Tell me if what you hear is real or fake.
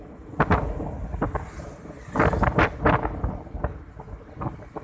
real